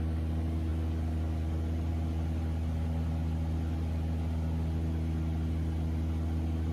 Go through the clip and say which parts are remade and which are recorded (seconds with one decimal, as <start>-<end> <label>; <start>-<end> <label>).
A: 0.0-6.7 recorded